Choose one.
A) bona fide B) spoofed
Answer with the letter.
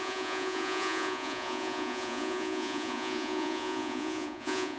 B